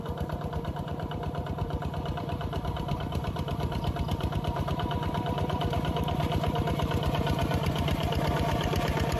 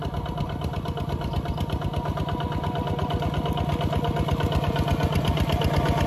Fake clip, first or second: first